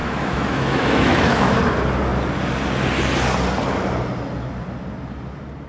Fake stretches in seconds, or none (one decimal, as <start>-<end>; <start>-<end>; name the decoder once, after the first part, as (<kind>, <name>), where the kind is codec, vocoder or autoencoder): 0.0-1.6 (autoencoder, DAC-VAE)